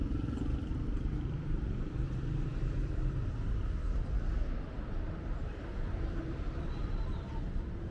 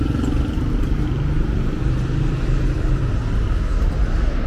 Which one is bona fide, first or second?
second